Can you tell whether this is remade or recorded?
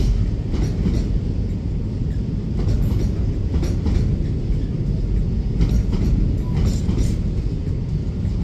recorded